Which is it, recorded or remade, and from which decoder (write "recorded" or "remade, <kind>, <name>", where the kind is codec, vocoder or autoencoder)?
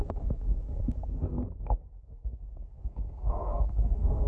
remade, codec, SNAC